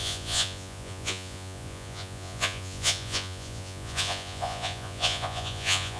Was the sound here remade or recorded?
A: remade